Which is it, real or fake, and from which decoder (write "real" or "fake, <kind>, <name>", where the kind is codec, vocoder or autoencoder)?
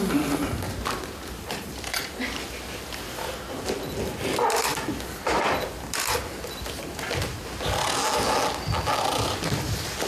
real